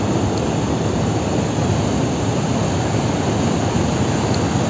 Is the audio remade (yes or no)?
no